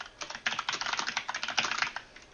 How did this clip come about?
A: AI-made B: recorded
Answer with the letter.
B